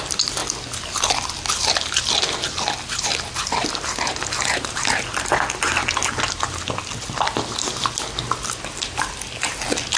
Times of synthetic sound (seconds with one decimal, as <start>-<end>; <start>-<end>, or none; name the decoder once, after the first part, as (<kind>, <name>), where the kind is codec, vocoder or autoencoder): none